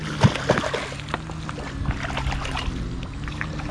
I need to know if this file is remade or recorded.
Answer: recorded